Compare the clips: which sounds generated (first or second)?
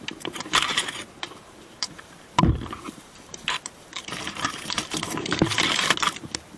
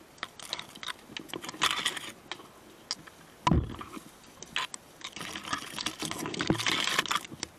first